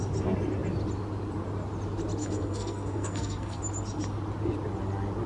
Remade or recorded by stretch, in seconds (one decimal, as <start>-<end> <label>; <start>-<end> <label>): 0.0-2.2 recorded; 2.2-3.6 remade; 3.6-5.3 recorded